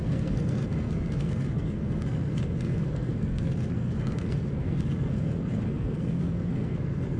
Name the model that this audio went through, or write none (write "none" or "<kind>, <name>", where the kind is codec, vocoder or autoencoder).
codec, SNAC